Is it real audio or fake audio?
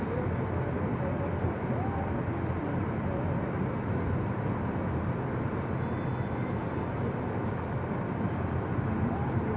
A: real